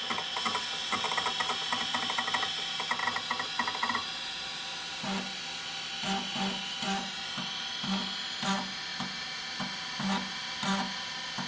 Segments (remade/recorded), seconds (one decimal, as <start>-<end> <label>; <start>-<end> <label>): 0.0-4.0 recorded; 4.0-4.9 remade; 4.9-8.9 recorded; 8.9-9.9 remade; 9.9-11.5 recorded